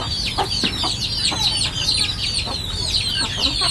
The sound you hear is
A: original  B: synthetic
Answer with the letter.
A